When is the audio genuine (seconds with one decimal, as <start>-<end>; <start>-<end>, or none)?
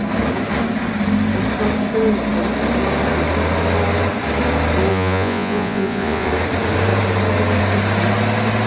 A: 0.0-4.9; 6.3-8.7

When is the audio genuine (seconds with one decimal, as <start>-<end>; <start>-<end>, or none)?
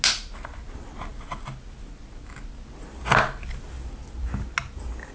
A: 0.0-5.1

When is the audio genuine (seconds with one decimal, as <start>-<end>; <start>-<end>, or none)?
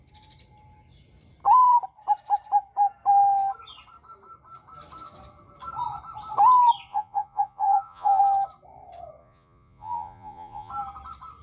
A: 0.0-6.9; 8.2-9.2; 10.7-11.4